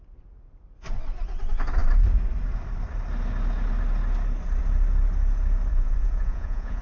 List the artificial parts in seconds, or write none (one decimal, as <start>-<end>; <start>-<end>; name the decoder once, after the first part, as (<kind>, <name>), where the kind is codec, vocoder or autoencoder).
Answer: 5.7-6.8 (vocoder, Vocos)